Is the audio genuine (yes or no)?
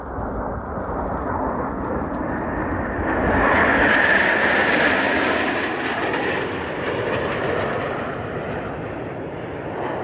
yes